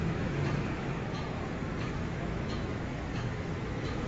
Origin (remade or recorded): remade